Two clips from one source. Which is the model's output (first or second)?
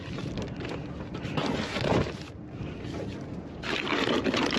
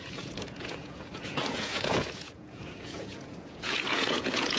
second